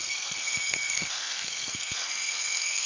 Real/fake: fake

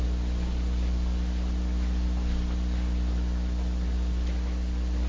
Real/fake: real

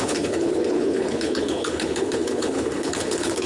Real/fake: fake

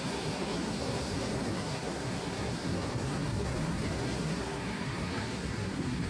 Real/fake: fake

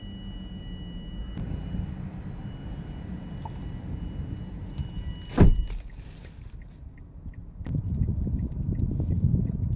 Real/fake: real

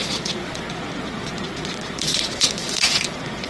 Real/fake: fake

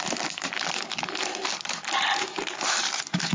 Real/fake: real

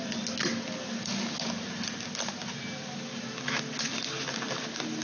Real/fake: real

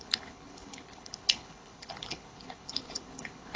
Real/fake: fake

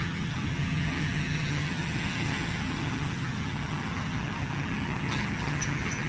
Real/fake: fake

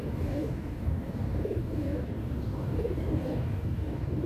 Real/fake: fake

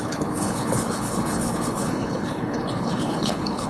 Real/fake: fake